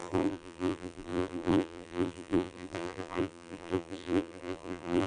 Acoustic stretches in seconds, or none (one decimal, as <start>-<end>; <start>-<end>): none